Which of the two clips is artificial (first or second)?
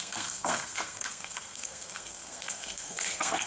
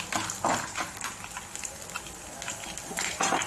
first